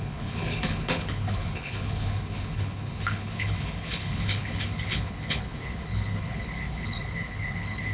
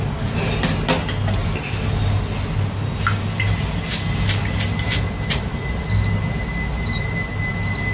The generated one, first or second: first